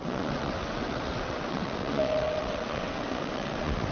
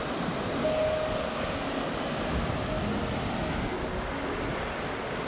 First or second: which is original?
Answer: second